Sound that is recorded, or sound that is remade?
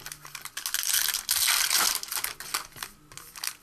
recorded